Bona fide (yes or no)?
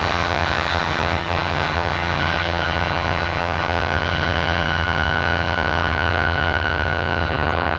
no